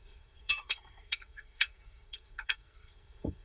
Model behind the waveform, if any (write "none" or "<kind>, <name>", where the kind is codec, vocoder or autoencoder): codec, SNAC